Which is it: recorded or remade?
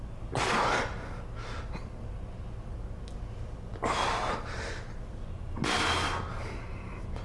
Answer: recorded